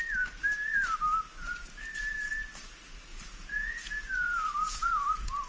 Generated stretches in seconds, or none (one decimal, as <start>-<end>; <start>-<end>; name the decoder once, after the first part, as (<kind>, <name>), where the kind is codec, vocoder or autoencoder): 3.1-5.5 (vocoder, Vocos)

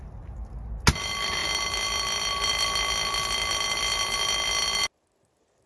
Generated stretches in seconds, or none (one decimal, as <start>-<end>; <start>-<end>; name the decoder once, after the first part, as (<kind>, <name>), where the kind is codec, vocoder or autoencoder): none

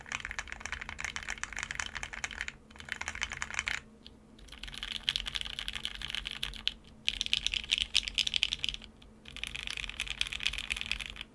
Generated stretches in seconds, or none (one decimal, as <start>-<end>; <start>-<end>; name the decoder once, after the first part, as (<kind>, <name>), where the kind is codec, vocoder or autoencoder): none